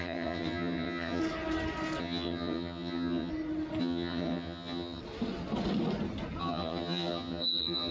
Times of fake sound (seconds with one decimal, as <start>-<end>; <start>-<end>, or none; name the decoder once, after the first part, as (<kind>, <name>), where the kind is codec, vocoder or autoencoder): 0.0-1.2 (vocoder, HiFi-GAN); 2.0-3.3; 3.8-5.0; 6.4-7.9